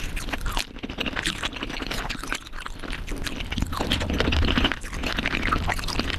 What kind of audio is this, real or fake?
real